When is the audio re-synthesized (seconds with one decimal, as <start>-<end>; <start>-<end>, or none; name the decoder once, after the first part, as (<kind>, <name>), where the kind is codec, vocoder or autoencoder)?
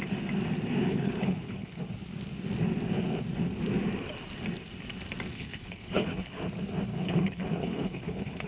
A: 0.9-1.8 (codec, HILCodec); 5.3-6.4; 6.9-8.5